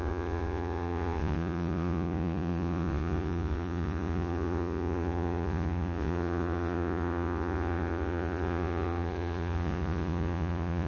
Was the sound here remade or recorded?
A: remade